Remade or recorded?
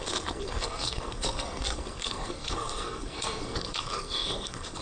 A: remade